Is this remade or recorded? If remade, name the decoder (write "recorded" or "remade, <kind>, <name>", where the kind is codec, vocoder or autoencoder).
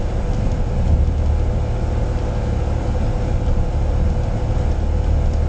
recorded